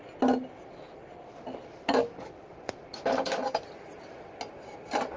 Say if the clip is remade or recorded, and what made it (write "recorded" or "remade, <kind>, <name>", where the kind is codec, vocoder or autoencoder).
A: recorded